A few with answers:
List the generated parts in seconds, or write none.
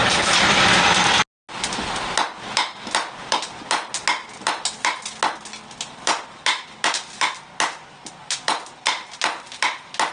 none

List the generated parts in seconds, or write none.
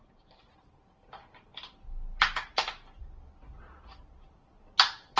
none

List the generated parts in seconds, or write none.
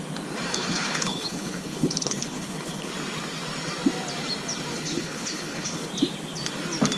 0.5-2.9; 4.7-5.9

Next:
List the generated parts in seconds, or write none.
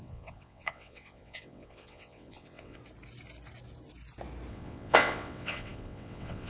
0.0-2.8; 4.5-6.5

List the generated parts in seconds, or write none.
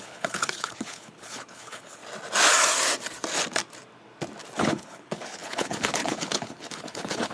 0.0-2.0; 4.6-7.3